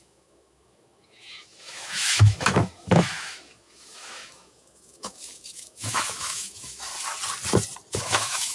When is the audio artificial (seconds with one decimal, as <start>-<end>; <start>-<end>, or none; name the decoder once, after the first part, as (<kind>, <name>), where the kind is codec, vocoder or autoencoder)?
0.0-6.9 (autoencoder, DAC-VAE); 7.9-8.5